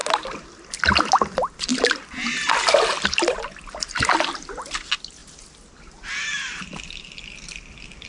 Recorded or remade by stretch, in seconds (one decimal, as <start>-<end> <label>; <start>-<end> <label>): 0.0-8.1 recorded